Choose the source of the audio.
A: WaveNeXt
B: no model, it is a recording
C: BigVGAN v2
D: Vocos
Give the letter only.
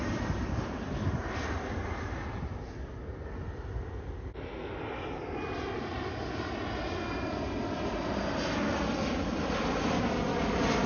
B